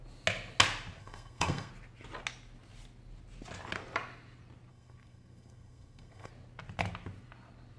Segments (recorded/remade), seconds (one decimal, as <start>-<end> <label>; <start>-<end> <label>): 0.0-1.0 recorded; 1.0-1.7 remade; 1.7-4.7 recorded; 4.7-6.3 remade; 6.3-7.8 recorded